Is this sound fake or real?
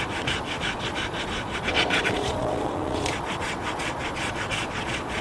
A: fake